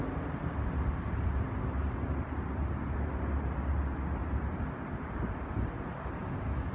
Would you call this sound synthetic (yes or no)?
no